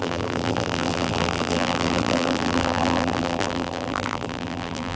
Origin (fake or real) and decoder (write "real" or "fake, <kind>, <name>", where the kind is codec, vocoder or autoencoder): fake, vocoder, BigVGAN v2